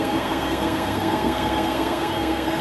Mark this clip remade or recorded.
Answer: remade